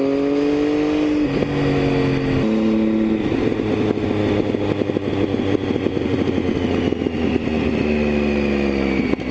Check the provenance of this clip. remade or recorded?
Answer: recorded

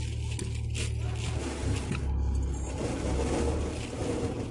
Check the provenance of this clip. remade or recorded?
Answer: recorded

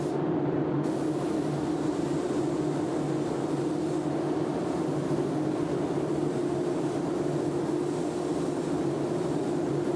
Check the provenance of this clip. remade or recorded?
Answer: recorded